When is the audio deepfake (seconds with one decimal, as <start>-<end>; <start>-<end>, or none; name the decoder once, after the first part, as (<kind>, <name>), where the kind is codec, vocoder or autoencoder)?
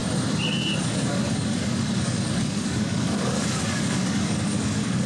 0.8-5.1 (codec, DAC)